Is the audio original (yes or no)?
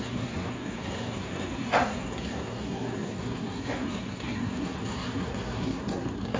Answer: no